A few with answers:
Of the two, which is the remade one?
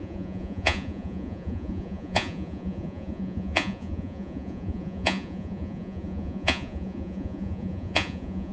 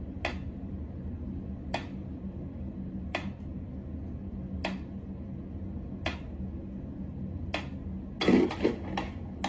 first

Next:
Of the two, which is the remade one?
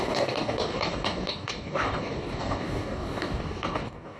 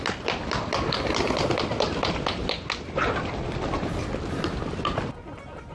first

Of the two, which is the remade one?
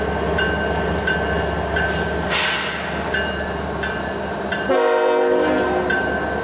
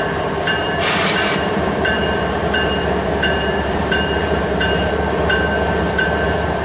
second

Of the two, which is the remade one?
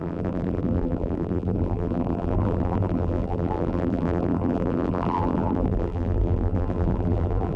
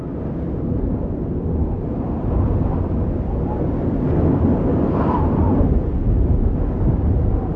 first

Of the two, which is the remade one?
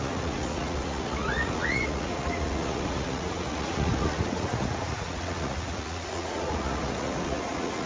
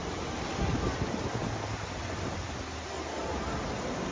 first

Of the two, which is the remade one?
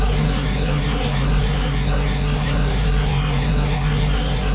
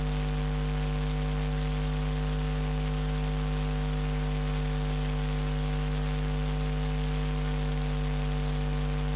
first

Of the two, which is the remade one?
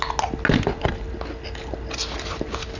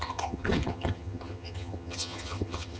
second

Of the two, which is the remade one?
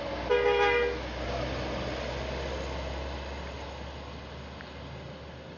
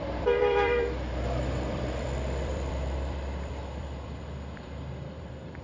second